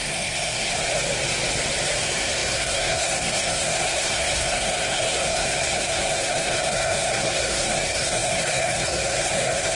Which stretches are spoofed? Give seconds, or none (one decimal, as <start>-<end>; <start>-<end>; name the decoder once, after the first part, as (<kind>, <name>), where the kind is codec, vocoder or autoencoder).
0.0-0.7 (codec, SNAC); 2.0-9.7